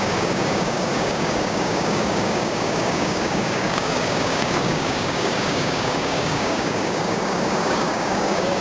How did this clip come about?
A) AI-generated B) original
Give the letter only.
A